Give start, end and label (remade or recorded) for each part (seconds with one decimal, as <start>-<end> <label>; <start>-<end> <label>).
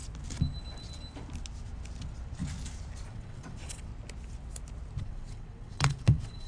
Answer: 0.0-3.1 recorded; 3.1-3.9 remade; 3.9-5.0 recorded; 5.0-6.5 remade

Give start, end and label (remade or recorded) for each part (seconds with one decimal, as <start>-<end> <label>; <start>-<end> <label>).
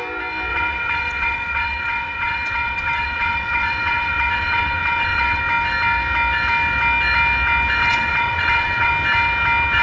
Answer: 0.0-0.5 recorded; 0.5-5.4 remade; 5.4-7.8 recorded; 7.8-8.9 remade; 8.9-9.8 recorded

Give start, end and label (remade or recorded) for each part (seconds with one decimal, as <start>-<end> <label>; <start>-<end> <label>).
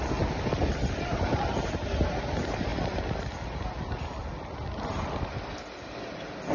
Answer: 0.0-6.5 recorded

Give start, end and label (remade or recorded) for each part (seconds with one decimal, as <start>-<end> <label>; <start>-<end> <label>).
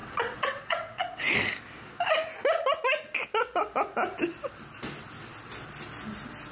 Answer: 0.0-1.2 remade; 1.2-6.5 recorded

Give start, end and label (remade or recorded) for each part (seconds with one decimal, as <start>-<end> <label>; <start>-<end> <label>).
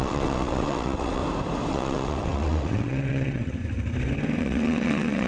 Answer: 0.0-1.2 remade; 1.2-1.7 recorded; 1.7-3.6 remade; 3.6-4.4 recorded; 4.4-5.3 remade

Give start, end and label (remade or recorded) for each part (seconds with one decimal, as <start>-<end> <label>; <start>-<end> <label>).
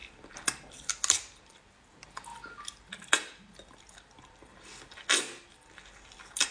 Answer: 0.0-6.5 recorded